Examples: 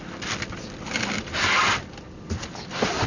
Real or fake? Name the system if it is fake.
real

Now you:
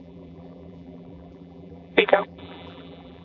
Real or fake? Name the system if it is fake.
fake, vocoder, BigVGAN v2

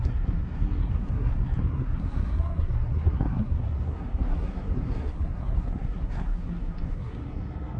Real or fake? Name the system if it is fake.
fake, codec, SNAC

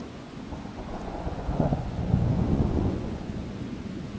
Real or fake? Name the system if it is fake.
fake, vocoder, Vocos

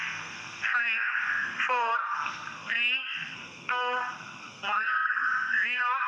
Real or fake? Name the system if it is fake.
fake, codec, SNAC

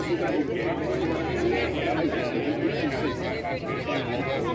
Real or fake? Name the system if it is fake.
real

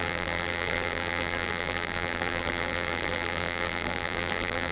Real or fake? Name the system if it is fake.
fake, vocoder, BigVGAN v2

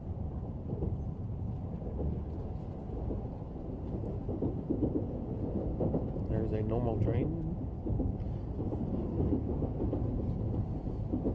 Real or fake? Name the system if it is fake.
real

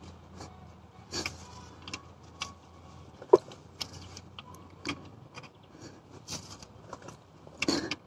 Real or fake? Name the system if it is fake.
real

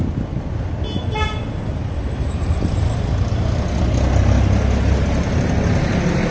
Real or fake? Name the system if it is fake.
real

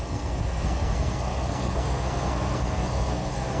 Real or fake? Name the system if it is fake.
fake, codec, SNAC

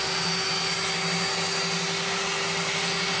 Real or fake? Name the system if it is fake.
real